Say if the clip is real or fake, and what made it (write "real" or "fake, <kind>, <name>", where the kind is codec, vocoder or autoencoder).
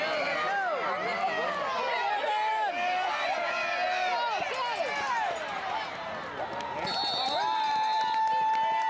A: real